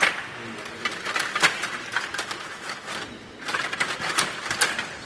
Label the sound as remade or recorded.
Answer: recorded